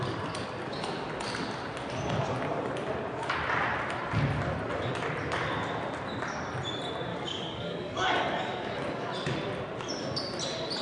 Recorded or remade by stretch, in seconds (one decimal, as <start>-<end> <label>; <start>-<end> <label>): 0.0-7.1 recorded; 7.1-9.1 remade; 9.1-10.8 recorded